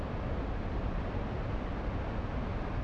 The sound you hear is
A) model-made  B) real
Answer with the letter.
B